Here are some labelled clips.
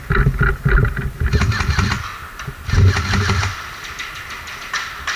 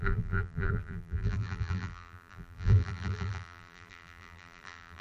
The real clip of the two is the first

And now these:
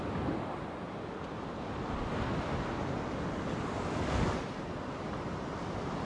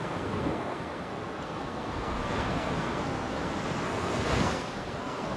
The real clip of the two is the first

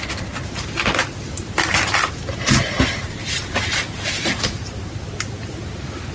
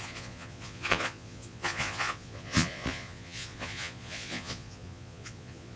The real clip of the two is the first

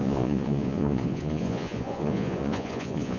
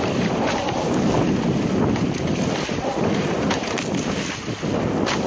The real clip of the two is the second